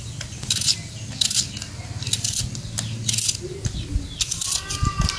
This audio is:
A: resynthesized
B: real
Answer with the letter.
B